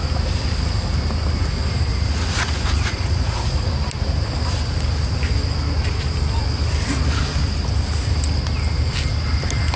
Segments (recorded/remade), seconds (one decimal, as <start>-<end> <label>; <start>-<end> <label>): 0.0-1.9 recorded; 1.9-3.7 remade; 3.7-9.8 recorded